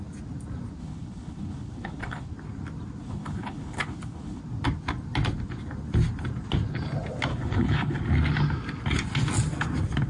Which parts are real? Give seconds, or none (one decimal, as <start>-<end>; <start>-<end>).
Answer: 0.0-0.8; 2.3-3.0; 4.4-7.3; 8.0-10.1